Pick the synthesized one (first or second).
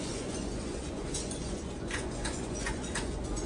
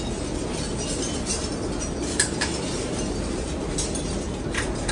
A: first